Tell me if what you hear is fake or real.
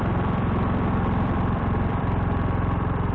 fake